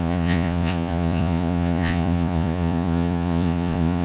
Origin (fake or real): fake